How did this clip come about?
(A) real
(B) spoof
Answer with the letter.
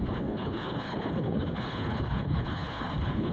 B